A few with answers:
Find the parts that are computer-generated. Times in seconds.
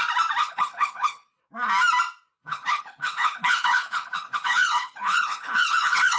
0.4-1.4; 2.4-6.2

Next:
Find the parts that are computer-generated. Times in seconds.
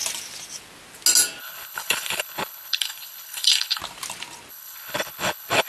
1.4-3.8; 4.5-5.7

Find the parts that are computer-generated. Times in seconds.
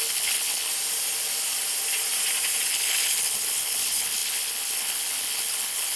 0.0-0.7; 2.7-6.0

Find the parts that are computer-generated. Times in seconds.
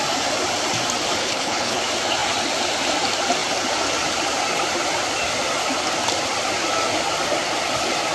1.2-1.8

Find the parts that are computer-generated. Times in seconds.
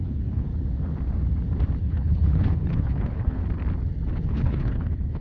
0.0-0.5; 1.8-3.4; 4.1-5.2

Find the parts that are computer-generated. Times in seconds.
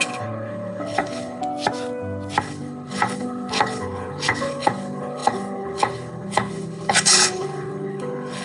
0.0-1.4; 2.4-8.4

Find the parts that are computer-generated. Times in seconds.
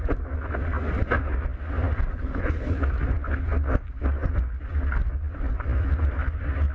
2.1-2.8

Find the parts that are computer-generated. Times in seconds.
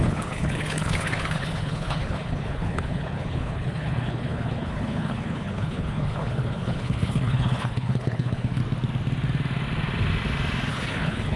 0.0-8.6; 10.7-11.4